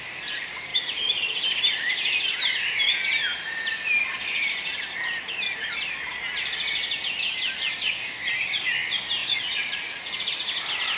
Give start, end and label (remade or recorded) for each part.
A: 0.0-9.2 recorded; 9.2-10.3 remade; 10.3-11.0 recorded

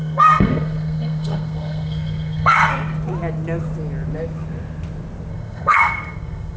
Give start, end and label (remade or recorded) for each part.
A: 0.0-2.7 remade; 2.7-5.3 recorded; 5.3-6.6 remade

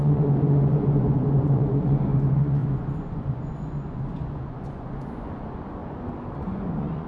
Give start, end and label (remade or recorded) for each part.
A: 0.0-5.8 remade; 5.8-6.3 recorded; 6.3-7.1 remade

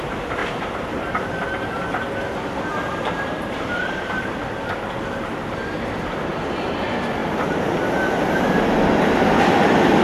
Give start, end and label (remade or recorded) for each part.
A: 0.0-0.4 recorded; 0.4-1.3 remade; 1.3-2.7 recorded; 2.7-4.2 remade; 4.2-6.3 recorded; 6.3-6.8 remade; 6.8-10.0 recorded

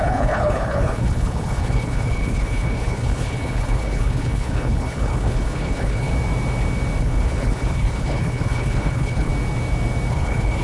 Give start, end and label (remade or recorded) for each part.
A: 0.0-6.1 remade; 6.1-7.0 recorded; 7.0-9.3 remade; 9.3-10.1 recorded; 10.1-10.6 remade

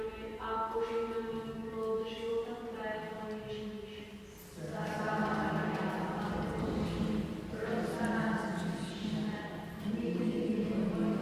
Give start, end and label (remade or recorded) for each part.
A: 0.0-11.2 recorded

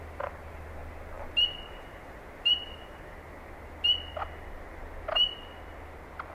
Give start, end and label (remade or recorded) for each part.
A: 0.0-6.3 recorded